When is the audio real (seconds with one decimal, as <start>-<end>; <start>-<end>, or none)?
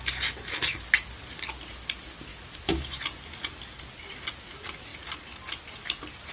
0.0-2.3; 3.0-6.3